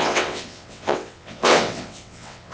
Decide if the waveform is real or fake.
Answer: fake